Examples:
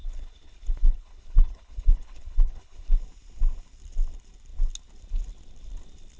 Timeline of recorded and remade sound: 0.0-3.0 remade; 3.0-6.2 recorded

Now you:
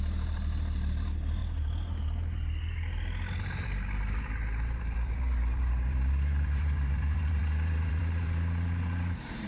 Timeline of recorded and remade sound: 0.0-1.4 remade; 1.4-3.4 recorded; 3.4-9.5 remade

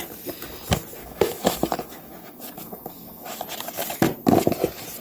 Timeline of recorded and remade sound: 0.0-1.0 recorded; 1.0-3.4 remade; 3.4-5.0 recorded

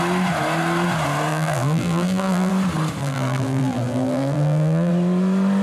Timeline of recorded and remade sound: 0.0-1.3 recorded; 1.3-2.5 remade; 2.5-3.0 recorded; 3.0-4.9 remade; 4.9-5.6 recorded

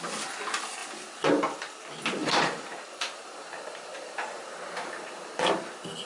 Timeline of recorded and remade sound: 0.0-2.2 recorded; 2.2-5.5 remade; 5.5-6.1 recorded